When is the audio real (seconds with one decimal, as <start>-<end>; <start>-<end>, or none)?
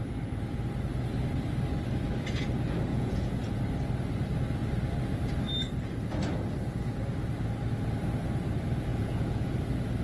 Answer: 0.0-2.9; 3.6-8.9; 9.5-10.0